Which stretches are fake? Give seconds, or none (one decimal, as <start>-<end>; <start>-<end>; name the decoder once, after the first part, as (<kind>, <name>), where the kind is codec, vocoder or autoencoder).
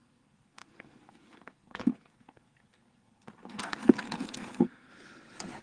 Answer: 0.0-4.9 (codec, SNAC)